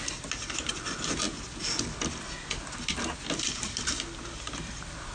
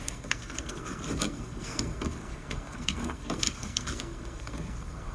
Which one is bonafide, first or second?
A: first